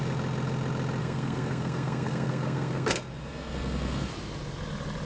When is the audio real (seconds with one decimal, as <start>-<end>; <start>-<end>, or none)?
0.0-1.0; 4.1-5.1